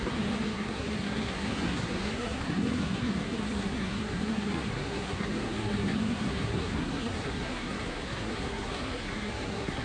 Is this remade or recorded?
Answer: remade